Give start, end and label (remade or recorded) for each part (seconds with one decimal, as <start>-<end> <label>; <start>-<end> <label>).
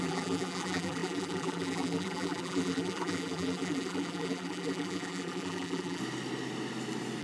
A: 0.0-6.0 remade; 6.0-7.2 recorded